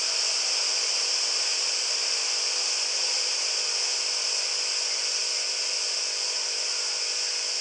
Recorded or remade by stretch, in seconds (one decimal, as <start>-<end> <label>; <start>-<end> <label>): 0.0-7.6 recorded